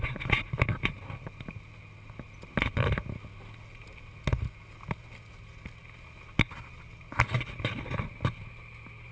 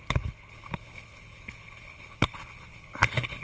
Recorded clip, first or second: first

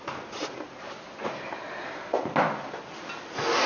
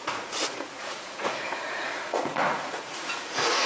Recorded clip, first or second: first